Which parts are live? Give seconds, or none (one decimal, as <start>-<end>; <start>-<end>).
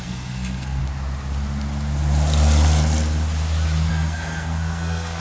0.8-3.9